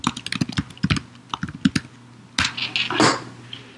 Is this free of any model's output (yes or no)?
yes